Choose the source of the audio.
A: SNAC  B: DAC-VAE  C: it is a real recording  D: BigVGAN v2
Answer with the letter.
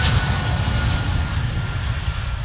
C